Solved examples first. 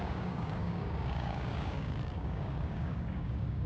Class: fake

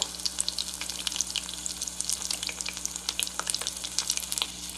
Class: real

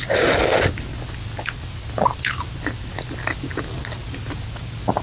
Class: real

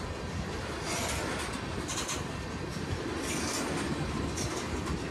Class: real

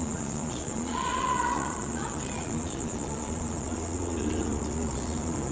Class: fake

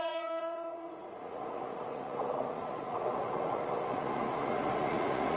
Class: fake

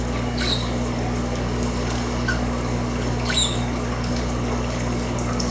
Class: fake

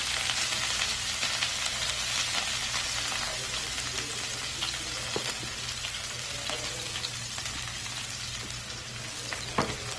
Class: real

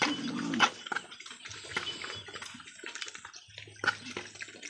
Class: real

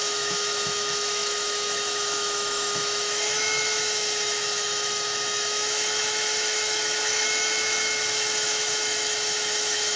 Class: fake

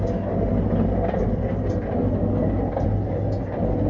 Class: real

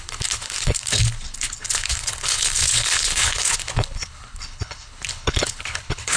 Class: fake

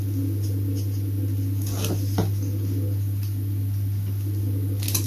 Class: real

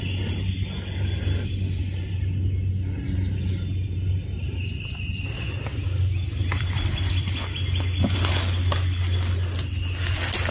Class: real